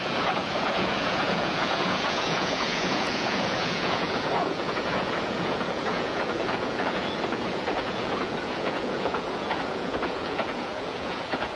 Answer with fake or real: fake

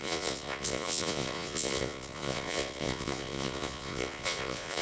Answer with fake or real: fake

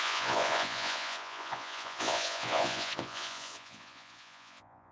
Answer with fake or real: fake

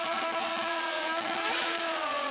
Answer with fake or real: fake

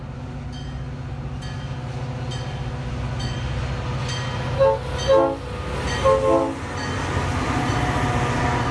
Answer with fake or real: real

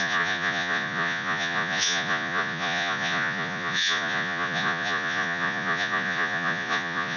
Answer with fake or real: fake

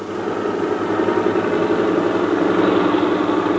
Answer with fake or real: real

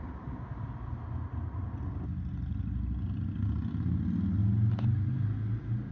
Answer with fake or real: real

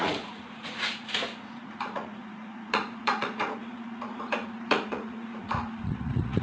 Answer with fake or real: fake